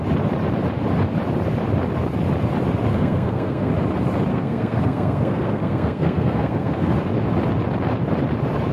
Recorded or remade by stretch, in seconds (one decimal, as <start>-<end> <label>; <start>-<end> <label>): 0.0-2.9 recorded; 2.9-3.7 remade; 3.7-4.3 recorded; 4.3-6.9 remade; 6.9-8.7 recorded